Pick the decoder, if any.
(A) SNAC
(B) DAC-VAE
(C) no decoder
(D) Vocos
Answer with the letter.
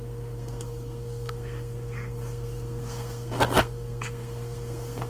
A